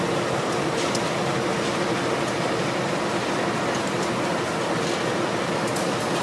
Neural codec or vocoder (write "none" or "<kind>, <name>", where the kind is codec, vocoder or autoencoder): none